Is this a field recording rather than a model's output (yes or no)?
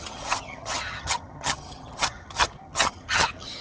no